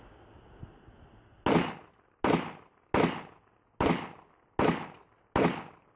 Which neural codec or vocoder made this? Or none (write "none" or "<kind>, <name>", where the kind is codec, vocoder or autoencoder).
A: none